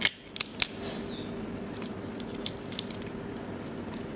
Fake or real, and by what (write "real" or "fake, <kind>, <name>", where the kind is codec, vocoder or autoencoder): real